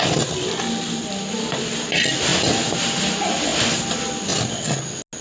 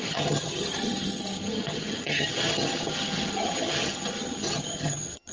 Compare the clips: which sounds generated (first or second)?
second